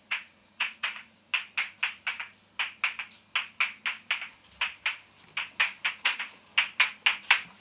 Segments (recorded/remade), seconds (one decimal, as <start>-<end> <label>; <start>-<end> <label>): 0.0-1.3 remade; 1.3-5.9 recorded; 5.9-6.5 remade; 6.5-7.6 recorded